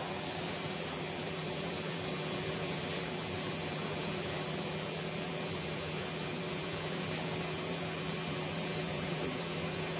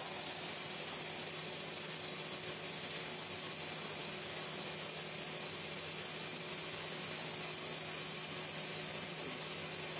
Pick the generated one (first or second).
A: first